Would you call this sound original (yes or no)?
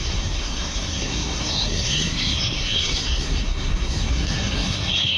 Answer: no